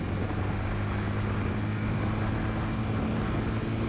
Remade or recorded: recorded